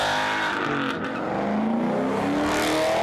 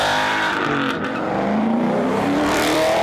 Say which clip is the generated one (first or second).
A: second